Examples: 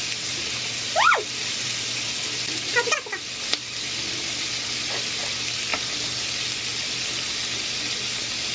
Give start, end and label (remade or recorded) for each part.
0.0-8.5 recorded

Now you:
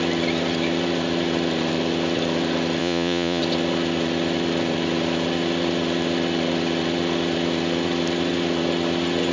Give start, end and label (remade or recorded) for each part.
0.0-2.8 recorded; 2.8-3.4 remade; 3.4-9.3 recorded

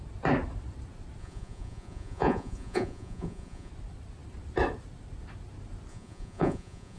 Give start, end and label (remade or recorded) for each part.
0.0-1.2 recorded; 1.2-3.7 remade; 3.7-5.9 recorded; 5.9-7.0 remade

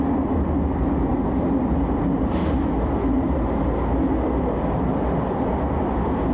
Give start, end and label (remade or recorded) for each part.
0.0-6.3 recorded

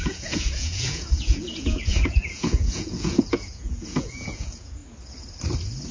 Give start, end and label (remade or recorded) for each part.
0.0-4.8 remade; 4.8-5.9 recorded

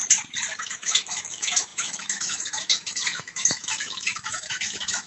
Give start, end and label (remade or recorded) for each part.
0.0-0.6 recorded; 0.6-5.1 remade

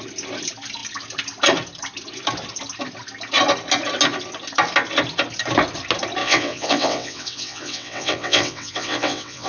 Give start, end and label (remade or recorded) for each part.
0.0-6.2 recorded; 6.2-9.5 remade